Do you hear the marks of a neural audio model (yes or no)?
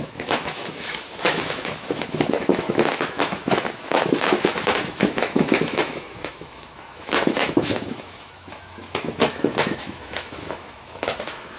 yes